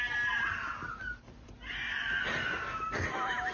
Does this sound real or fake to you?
real